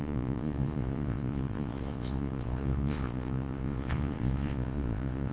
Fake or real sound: fake